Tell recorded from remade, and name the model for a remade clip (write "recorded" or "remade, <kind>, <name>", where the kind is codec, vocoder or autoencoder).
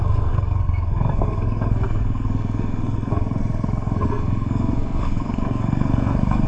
remade, codec, SNAC